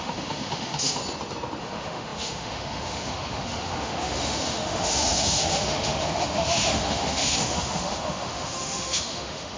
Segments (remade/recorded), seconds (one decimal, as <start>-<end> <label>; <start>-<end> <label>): 0.0-1.0 remade; 1.0-1.6 recorded; 1.6-9.6 remade